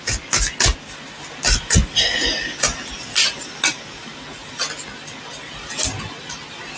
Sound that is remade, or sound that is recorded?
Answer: recorded